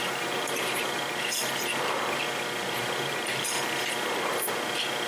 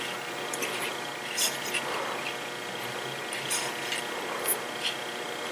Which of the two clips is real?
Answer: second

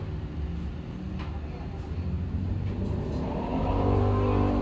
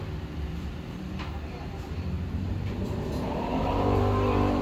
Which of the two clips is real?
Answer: first